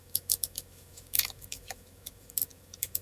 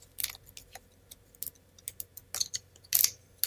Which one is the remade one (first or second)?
first